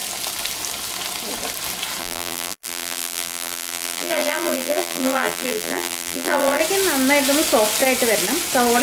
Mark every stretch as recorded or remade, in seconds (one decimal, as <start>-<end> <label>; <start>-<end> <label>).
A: 0.0-2.0 recorded; 2.0-6.6 remade; 6.6-8.8 recorded